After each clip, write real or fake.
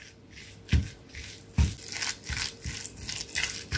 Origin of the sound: real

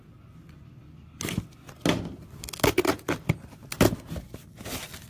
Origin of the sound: real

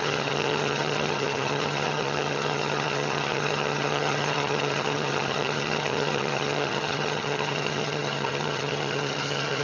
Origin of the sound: fake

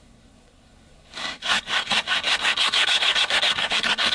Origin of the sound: fake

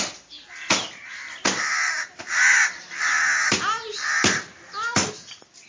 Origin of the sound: real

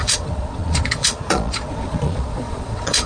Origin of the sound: fake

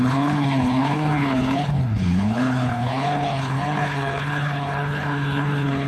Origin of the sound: fake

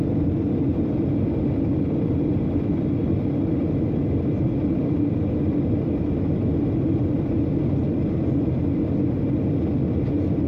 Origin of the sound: real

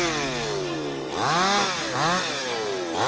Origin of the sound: real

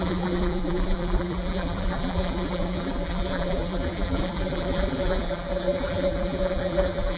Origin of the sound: fake